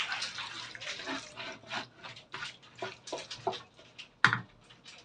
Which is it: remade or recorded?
recorded